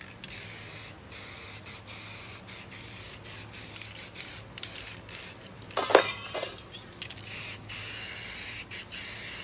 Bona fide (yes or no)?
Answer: yes